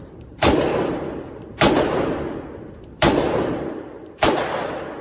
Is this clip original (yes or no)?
no